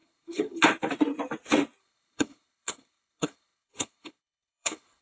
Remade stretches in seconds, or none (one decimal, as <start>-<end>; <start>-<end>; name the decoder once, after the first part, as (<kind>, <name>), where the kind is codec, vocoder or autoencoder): 0.0-0.6 (codec, HILCodec); 1.8-5.0